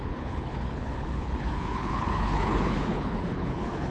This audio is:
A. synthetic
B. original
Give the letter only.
A